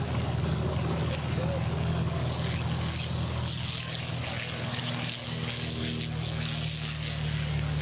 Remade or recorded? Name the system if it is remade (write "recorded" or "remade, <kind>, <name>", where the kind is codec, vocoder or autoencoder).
remade, codec, DAC